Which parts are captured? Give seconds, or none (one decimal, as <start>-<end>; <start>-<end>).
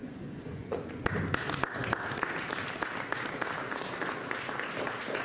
1.1-5.2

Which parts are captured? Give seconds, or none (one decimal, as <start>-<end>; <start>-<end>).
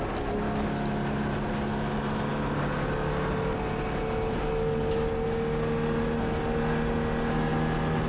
0.0-8.1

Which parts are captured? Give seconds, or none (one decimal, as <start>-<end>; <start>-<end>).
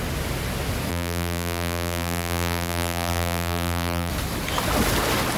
0.0-0.9; 4.1-5.4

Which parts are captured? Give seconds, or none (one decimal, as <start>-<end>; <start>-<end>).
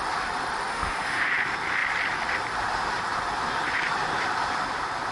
0.0-0.7; 1.3-5.1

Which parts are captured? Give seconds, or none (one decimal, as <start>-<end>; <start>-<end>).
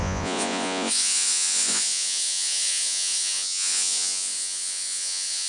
none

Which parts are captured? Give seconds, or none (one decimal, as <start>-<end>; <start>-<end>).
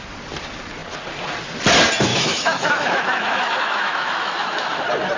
0.0-2.1; 4.8-5.2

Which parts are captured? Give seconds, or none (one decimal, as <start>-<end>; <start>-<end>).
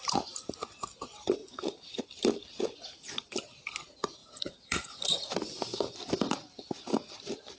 0.0-1.4; 2.0-4.2; 5.3-7.6